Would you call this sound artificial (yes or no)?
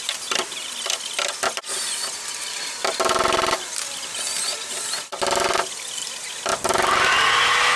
no